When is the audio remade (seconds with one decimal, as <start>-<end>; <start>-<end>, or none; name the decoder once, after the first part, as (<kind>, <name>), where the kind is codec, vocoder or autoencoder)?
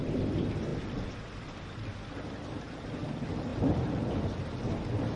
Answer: 3.5-4.2 (vocoder, BigVGAN v2)